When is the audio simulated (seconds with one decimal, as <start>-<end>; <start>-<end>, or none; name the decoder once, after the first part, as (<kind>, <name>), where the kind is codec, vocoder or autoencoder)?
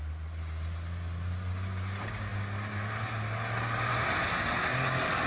none